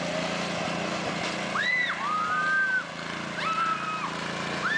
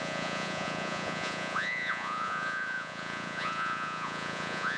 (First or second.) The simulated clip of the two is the second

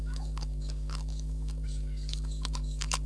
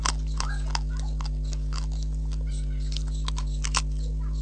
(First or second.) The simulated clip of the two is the first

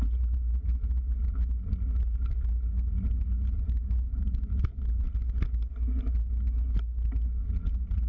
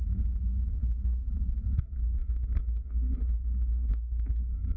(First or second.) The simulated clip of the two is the second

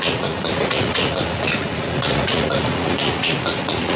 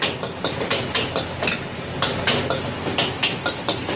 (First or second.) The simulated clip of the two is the first